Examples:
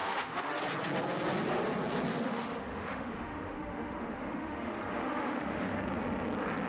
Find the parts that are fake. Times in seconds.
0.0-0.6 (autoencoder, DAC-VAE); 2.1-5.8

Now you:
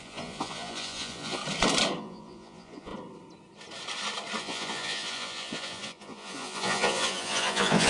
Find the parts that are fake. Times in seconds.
0.0-1.4 (vocoder, Vocos); 2.0-2.9; 4.4-7.9

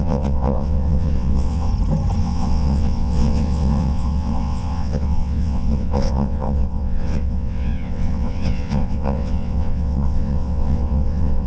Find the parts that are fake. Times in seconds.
0.0-1.7 (vocoder, WaveNeXt); 2.2-11.5

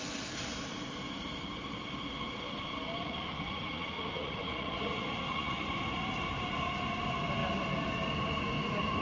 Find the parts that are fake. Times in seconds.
3.0-5.7 (vocoder, Vocos)